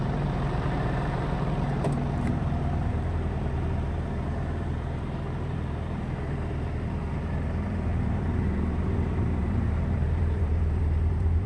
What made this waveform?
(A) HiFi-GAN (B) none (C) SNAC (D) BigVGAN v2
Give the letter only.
D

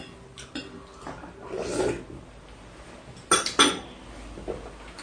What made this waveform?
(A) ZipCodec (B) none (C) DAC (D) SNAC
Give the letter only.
B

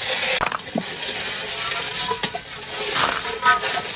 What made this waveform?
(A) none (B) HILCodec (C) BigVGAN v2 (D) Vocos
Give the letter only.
A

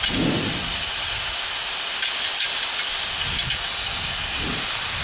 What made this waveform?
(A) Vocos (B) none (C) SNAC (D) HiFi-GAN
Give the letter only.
B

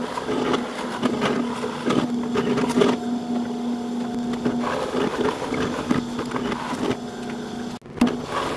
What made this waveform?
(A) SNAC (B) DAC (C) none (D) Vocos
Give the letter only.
C